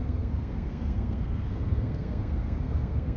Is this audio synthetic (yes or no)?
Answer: yes